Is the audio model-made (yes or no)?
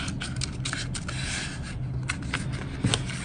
no